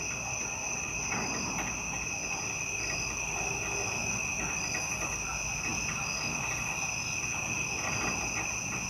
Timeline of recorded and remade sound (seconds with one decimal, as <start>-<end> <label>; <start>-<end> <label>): 0.0-8.9 recorded